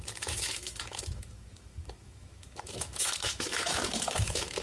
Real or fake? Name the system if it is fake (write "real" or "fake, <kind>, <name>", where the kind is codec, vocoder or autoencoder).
fake, autoencoder, DAC-VAE